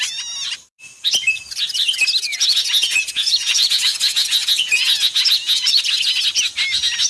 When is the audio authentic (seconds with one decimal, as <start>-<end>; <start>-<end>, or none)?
0.0-2.3; 5.8-7.1